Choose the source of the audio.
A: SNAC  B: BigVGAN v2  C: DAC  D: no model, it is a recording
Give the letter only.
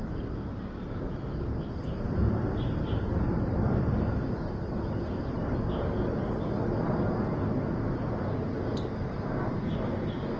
D